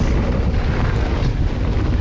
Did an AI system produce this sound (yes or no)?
no